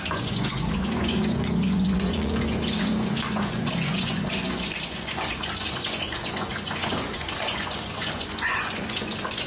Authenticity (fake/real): fake